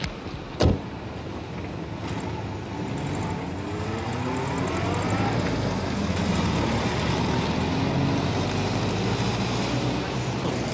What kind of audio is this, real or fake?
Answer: real